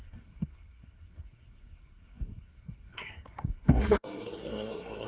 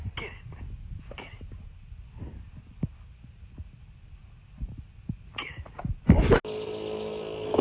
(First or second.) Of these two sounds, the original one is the second